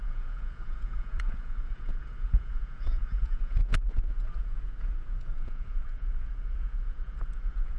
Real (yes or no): no